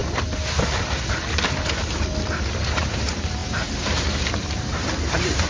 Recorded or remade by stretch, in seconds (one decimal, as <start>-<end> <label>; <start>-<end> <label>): 0.0-2.4 recorded; 2.4-5.5 remade